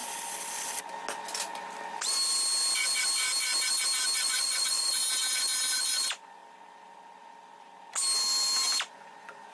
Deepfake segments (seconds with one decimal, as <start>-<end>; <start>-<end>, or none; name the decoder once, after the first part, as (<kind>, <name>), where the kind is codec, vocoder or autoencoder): 4.2-5.0 (vocoder, Vocos); 5.8-6.4; 8.9-9.5

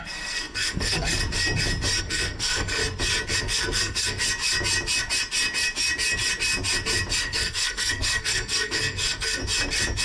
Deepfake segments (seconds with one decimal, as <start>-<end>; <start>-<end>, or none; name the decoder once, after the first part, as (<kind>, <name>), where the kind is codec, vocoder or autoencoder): 0.0-1.2 (codec, SNAC); 2.0-2.8; 3.4-4.2; 7.2-9.4

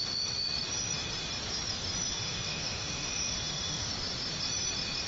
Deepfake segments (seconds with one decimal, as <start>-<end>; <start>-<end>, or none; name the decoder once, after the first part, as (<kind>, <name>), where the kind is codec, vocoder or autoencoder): 2.1-3.9 (autoencoder, DAC-VAE)

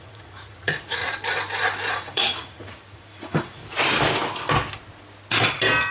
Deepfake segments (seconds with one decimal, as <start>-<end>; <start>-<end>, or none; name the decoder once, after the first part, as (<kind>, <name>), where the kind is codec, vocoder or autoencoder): 0.0-1.0 (vocoder, Vocos); 1.9-3.6

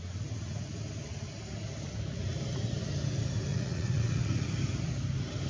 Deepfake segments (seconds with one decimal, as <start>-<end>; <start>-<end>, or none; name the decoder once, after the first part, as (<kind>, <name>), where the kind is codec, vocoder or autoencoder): 3.5-4.5 (vocoder, Vocos)